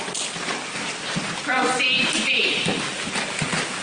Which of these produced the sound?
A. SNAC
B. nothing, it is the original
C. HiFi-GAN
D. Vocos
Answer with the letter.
B